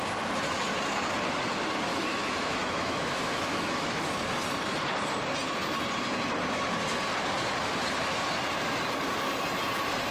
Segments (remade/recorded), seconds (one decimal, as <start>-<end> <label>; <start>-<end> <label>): 0.0-1.9 recorded; 1.9-4.1 remade; 4.1-10.1 recorded